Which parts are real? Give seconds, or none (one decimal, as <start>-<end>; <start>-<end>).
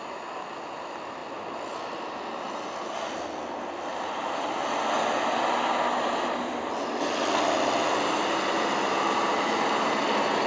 0.0-3.9; 4.6-8.9; 9.7-10.5